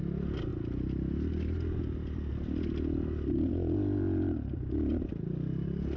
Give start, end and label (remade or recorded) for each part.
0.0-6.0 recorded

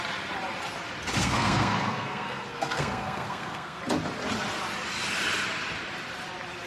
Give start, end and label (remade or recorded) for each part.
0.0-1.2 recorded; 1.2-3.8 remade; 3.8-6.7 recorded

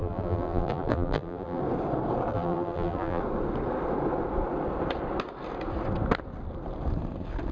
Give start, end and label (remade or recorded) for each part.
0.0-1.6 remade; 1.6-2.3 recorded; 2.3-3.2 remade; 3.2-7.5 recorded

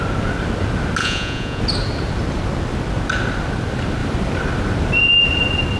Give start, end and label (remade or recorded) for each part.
0.0-1.0 recorded; 1.0-1.6 remade; 1.6-5.8 recorded

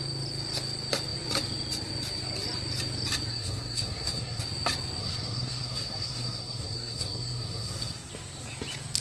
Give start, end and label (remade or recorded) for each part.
0.0-3.3 recorded; 3.3-4.4 remade; 4.4-5.0 recorded; 5.0-8.1 remade; 8.1-9.0 recorded